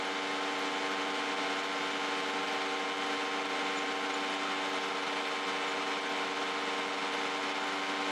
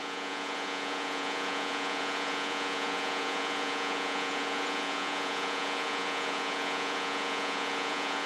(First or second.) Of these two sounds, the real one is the first